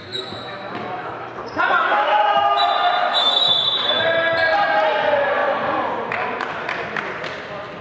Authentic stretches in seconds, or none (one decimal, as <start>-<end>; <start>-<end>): 1.3-1.9; 2.6-3.0; 4.0-7.8